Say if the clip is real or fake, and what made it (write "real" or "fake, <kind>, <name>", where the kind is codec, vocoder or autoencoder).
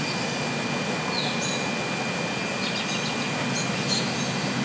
real